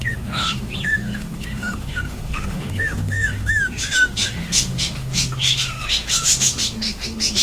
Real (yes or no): no